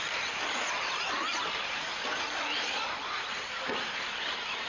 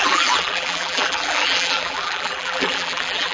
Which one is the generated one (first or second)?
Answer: second